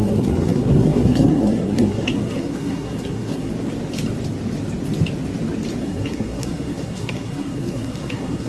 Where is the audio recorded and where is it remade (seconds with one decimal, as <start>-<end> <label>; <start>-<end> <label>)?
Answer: 0.0-3.5 remade; 3.5-5.8 recorded; 5.8-8.5 remade